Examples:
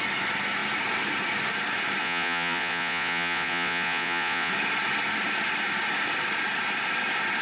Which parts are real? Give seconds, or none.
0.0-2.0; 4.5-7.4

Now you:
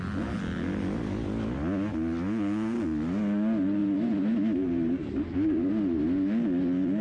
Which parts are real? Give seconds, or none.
0.0-3.8; 5.7-7.0